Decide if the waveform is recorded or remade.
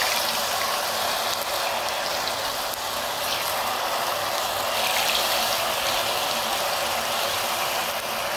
recorded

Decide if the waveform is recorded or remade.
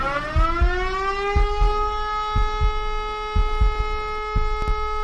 recorded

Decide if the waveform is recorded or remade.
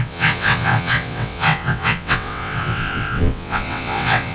remade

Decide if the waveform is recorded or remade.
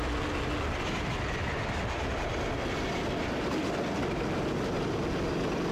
recorded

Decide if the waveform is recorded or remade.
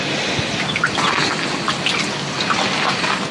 recorded